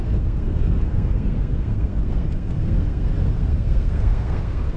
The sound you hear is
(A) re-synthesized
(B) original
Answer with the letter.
A